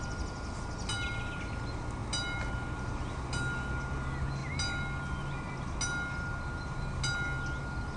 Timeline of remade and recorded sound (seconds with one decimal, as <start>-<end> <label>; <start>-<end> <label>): 0.0-8.0 recorded